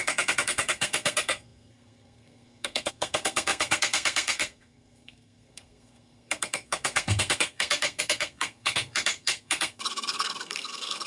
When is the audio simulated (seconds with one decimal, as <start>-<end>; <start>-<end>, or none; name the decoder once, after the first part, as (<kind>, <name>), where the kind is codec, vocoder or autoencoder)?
0.0-11.1 (codec, SNAC)